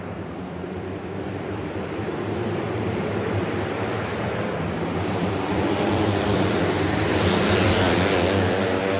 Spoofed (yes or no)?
yes